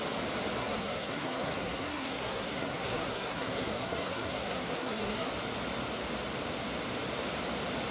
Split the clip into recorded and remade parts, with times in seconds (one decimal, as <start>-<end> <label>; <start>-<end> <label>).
0.0-0.6 recorded; 0.6-5.3 remade; 5.3-7.9 recorded